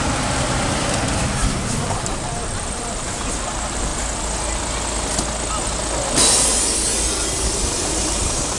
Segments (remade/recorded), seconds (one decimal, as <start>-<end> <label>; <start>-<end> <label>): 0.0-3.9 remade; 3.9-7.5 recorded; 7.5-8.6 remade